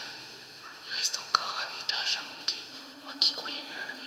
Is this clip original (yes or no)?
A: no